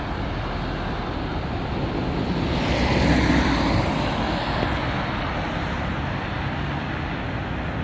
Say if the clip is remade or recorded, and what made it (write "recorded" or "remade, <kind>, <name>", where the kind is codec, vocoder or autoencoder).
recorded